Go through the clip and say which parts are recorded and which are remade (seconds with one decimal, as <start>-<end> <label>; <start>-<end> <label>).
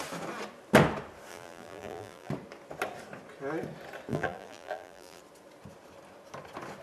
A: 0.0-1.3 recorded; 1.3-2.3 remade; 2.3-4.1 recorded; 4.1-5.2 remade; 5.2-6.8 recorded